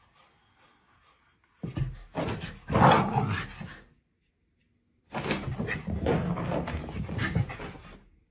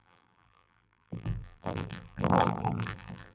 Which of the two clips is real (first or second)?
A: first